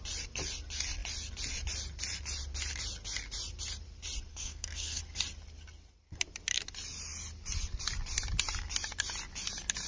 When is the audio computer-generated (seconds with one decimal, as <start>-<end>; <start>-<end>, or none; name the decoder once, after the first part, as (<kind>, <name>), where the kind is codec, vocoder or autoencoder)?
4.3-5.0 (codec, SNAC)